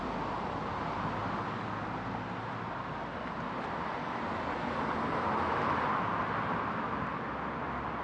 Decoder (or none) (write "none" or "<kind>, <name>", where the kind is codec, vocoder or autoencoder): none